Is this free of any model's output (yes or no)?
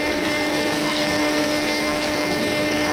no